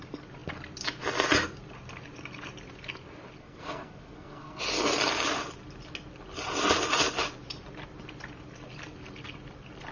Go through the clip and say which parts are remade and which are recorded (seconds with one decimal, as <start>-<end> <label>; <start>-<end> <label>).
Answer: 0.0-3.4 recorded; 3.4-4.6 remade; 4.6-9.9 recorded